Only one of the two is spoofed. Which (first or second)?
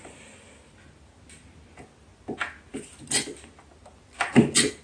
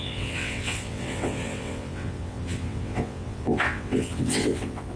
second